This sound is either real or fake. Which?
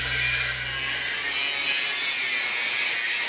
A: real